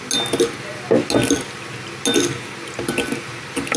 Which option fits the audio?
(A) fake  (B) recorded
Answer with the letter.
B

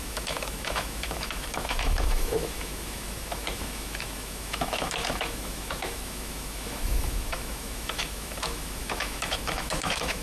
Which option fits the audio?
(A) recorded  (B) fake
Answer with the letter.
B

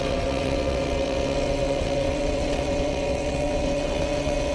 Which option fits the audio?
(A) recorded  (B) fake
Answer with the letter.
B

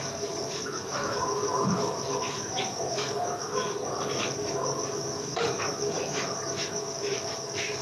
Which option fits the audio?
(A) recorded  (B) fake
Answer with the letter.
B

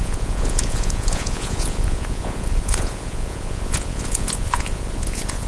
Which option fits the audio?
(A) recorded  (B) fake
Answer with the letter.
B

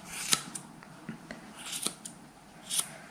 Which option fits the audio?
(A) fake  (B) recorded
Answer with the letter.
A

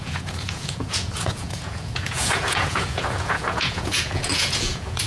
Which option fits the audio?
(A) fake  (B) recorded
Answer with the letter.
A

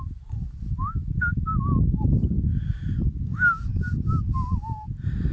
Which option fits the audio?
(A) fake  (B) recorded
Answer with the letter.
B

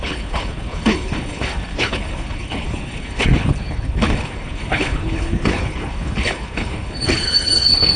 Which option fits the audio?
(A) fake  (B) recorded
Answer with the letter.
A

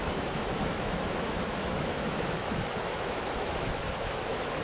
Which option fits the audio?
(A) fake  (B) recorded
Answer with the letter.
A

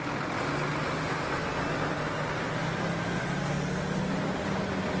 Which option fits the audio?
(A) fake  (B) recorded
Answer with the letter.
B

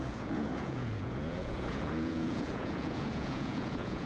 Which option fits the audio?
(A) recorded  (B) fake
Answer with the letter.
B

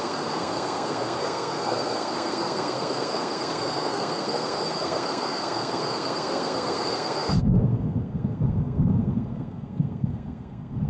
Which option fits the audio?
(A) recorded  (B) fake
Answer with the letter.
B